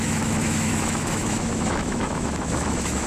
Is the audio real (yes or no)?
no